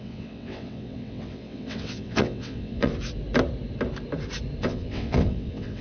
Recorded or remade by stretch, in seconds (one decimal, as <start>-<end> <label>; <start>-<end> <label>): 0.0-2.9 remade; 2.9-4.6 recorded; 4.6-5.8 remade